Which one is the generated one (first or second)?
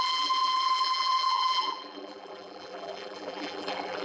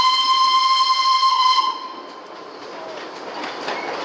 first